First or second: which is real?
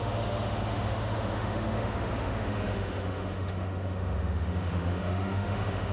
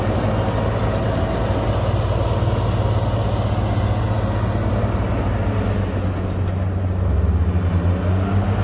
second